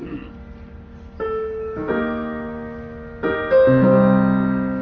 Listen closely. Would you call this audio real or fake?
real